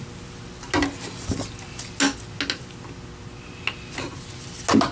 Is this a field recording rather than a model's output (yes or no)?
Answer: yes